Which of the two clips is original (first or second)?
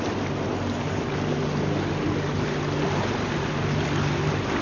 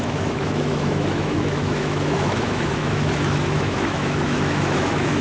first